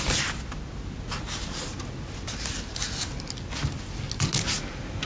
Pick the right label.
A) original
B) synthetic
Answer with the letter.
A